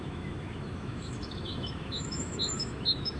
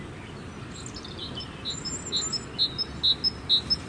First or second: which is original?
second